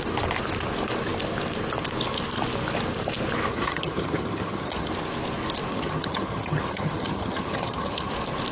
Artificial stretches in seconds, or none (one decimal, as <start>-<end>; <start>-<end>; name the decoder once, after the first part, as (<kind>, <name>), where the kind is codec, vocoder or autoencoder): 3.5-4.9 (vocoder, HiFi-GAN); 5.7-8.1